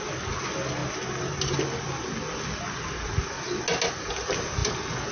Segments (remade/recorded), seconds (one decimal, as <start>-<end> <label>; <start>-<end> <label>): 0.0-5.1 recorded